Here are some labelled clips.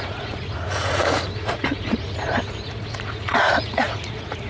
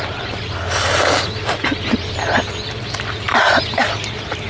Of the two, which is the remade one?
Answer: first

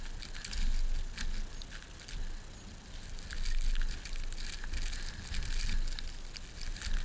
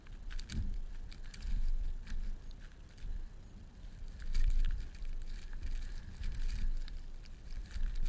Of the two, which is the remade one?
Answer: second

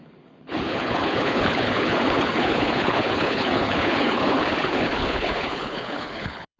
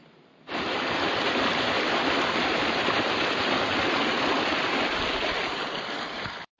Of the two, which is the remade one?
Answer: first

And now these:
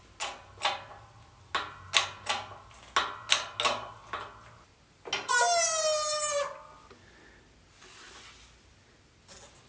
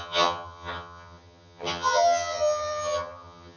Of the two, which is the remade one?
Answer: second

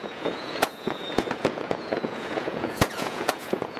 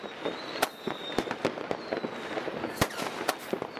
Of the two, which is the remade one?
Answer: first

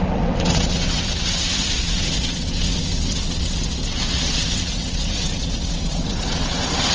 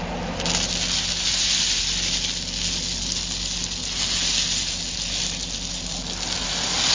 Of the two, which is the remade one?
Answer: first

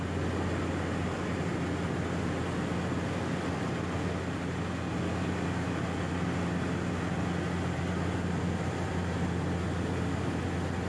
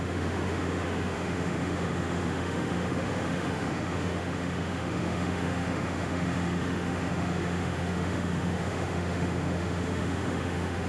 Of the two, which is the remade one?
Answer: second